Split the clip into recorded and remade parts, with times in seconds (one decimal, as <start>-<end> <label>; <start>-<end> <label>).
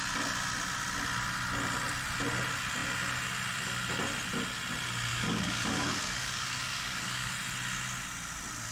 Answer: 0.0-5.1 recorded; 5.1-7.3 remade; 7.3-8.7 recorded